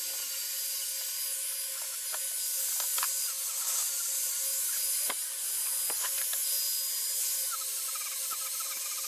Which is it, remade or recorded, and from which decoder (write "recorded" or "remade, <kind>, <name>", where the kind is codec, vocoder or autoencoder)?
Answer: recorded